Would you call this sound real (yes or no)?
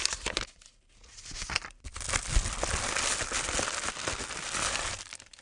yes